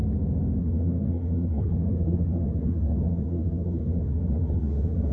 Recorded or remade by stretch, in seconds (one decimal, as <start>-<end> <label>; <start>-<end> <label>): 0.0-0.6 recorded; 0.6-5.1 remade